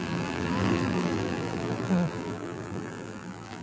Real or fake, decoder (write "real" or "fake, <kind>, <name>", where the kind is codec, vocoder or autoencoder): fake, vocoder, BigVGAN v2